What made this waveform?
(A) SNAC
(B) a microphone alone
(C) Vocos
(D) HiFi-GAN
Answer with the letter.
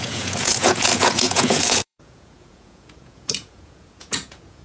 C